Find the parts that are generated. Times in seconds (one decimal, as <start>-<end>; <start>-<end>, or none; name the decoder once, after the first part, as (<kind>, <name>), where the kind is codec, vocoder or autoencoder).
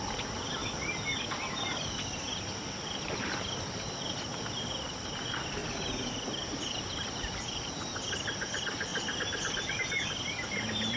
5.6-7.3 (vocoder, BigVGAN v2)